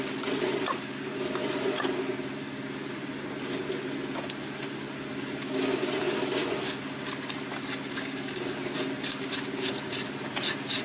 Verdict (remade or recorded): recorded